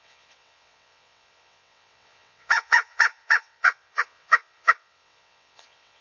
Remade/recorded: remade